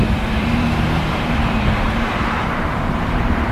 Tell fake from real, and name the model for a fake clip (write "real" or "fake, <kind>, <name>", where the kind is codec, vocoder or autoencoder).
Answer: fake, vocoder, BigVGAN v2